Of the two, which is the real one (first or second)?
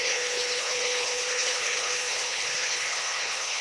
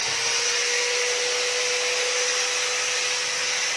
second